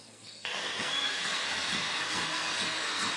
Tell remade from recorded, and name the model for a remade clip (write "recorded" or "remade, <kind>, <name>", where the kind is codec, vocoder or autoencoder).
remade, codec, SNAC